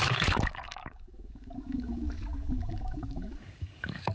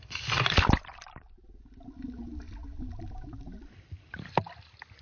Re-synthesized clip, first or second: first